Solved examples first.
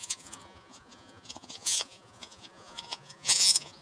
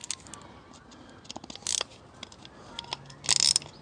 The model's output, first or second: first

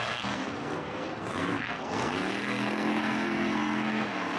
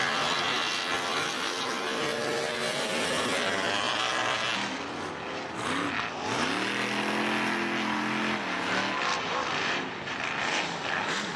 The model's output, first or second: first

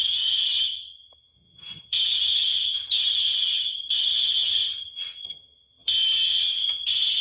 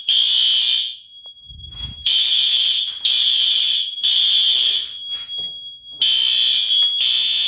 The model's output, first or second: first